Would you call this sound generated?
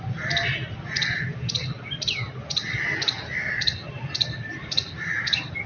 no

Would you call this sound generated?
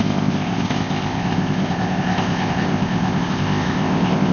yes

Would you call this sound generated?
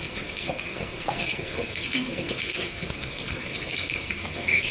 yes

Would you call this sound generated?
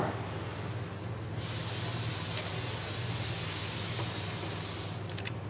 no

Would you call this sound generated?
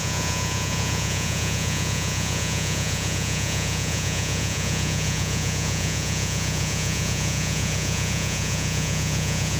yes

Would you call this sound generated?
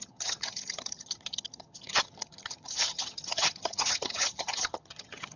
yes